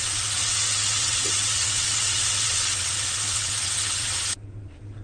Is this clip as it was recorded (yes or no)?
no